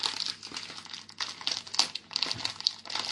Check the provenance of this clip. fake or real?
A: real